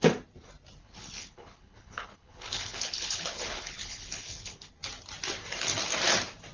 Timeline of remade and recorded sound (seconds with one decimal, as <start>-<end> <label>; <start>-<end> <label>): 0.0-0.8 recorded; 0.8-4.7 remade; 4.7-6.5 recorded